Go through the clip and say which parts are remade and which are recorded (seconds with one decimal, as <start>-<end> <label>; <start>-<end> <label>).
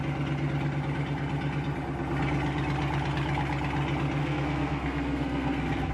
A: 0.0-4.2 recorded; 4.2-5.9 remade